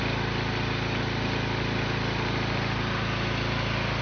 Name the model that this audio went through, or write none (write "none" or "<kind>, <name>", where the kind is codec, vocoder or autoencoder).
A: none